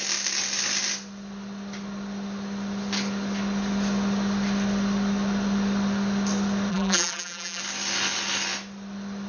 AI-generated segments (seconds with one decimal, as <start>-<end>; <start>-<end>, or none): 6.7-7.6